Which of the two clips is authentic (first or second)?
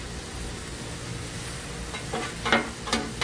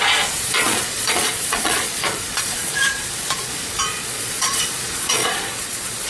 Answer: first